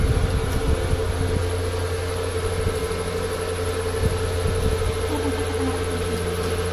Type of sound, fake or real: real